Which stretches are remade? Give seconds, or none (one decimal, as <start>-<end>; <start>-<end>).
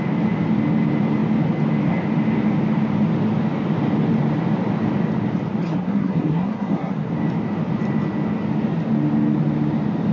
5.6-7.1